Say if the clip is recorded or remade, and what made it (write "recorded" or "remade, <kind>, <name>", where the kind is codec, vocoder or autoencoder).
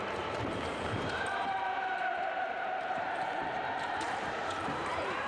remade, vocoder, BigVGAN v2